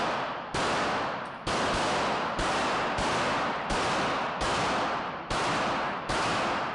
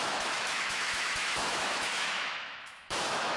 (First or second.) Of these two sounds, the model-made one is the second